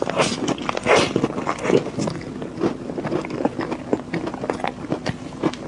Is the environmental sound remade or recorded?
recorded